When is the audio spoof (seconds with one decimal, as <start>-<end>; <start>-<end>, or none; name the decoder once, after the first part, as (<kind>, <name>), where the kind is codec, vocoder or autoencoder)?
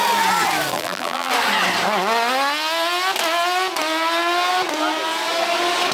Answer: 0.7-1.3 (vocoder, BigVGAN v2)